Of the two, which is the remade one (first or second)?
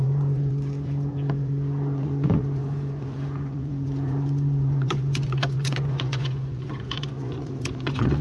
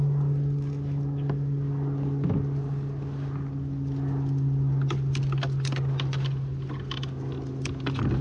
first